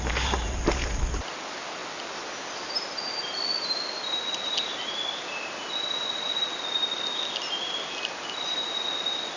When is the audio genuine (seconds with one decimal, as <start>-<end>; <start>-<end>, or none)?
0.0-9.4